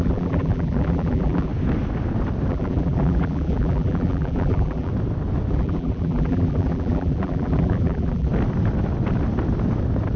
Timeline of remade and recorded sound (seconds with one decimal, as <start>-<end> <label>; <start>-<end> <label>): 0.0-1.5 remade; 1.5-2.5 recorded; 2.5-4.9 remade; 4.9-5.5 recorded; 5.5-8.3 remade; 8.3-10.2 recorded